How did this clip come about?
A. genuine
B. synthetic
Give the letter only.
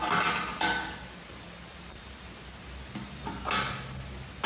A